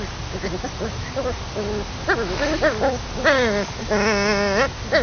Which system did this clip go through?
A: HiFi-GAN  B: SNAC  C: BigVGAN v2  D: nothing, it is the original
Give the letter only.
D